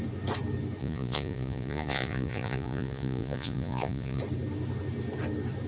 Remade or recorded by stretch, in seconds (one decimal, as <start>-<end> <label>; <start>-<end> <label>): 0.0-0.8 recorded; 0.8-4.2 remade; 4.2-5.7 recorded